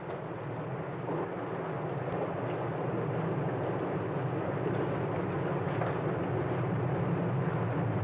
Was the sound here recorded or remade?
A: recorded